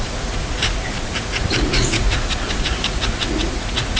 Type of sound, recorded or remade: remade